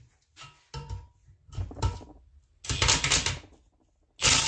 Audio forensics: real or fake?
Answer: real